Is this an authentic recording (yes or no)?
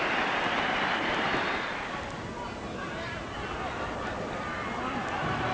yes